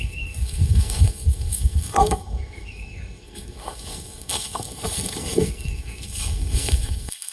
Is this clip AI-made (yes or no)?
yes